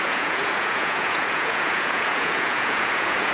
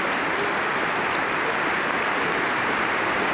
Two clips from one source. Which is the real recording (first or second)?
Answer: second